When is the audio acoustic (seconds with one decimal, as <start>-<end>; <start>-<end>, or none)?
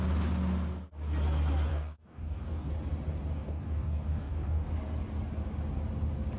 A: 0.0-1.7; 2.7-3.4; 4.7-6.4